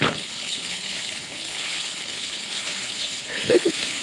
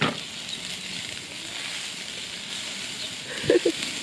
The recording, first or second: second